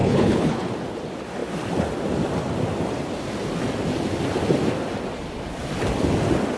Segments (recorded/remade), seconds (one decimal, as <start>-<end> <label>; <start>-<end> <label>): 0.0-0.7 remade; 0.7-6.6 recorded